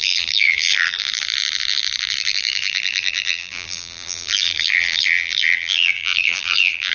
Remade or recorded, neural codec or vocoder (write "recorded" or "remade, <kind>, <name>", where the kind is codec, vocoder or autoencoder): remade, vocoder, BigVGAN v2